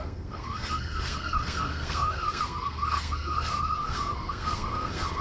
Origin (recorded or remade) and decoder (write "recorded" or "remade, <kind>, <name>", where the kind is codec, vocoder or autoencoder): remade, codec, SNAC